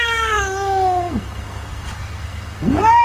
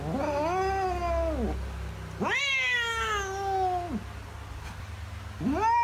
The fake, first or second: first